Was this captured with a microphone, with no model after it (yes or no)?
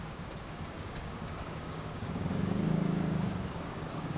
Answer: no